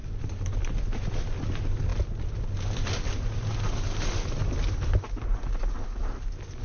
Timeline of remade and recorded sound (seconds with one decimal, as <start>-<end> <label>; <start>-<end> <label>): 0.0-6.6 recorded